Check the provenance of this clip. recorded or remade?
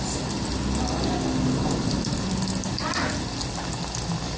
recorded